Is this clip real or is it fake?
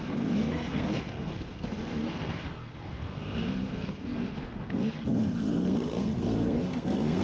fake